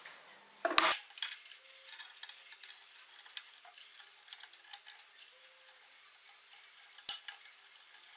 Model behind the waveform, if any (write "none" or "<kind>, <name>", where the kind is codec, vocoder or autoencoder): none